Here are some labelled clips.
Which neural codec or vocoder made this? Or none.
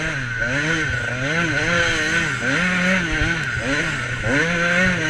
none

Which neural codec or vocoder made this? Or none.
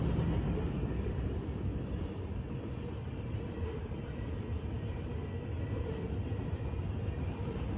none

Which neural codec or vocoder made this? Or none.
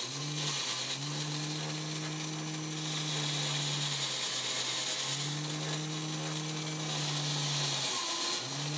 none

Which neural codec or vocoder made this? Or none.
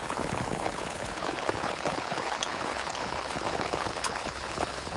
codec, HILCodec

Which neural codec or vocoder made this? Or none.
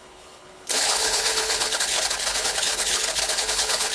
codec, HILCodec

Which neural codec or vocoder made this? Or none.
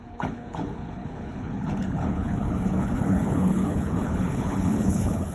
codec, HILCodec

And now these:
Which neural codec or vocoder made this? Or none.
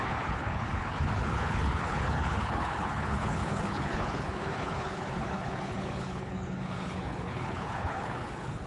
codec, HILCodec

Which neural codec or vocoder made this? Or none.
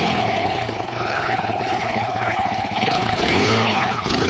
codec, HILCodec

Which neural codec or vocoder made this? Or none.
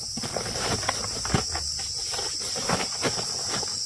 none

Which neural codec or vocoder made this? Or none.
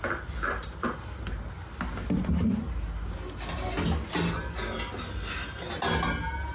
none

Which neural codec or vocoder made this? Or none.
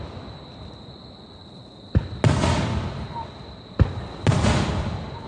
none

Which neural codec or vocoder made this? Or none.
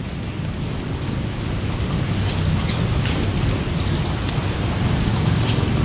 none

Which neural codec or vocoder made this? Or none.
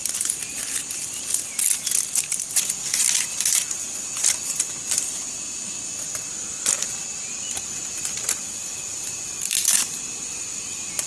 none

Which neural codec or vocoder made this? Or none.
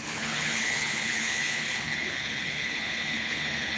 codec, HILCodec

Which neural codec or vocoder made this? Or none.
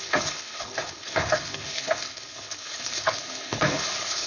codec, HILCodec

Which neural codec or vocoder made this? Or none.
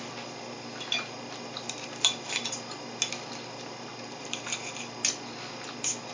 none